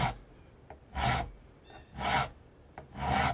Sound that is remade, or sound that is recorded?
recorded